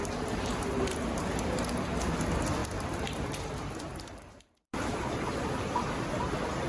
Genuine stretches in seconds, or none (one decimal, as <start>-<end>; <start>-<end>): 1.4-2.6; 6.1-6.7